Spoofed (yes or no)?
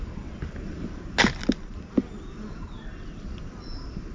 no